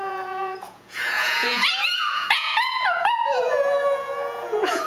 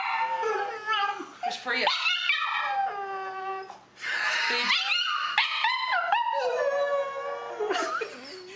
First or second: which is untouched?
second